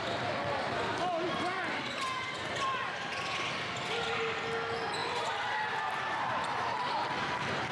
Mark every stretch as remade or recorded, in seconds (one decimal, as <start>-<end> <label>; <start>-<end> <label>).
0.0-5.0 recorded; 5.0-7.7 remade